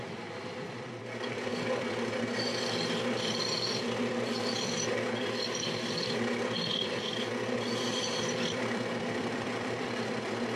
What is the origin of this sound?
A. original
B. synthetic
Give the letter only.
B